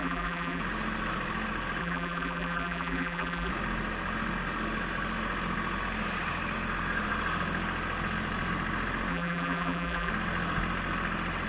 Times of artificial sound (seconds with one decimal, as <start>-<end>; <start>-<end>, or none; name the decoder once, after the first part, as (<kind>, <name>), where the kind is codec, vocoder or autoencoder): 0.0-0.6 (vocoder, BigVGAN v2); 1.8-3.5; 9.1-10.1